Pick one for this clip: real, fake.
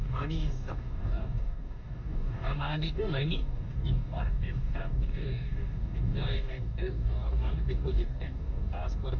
fake